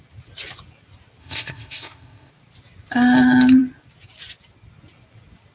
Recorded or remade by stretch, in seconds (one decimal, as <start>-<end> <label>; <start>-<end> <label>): 0.0-1.2 recorded; 1.2-2.3 remade; 2.3-5.5 recorded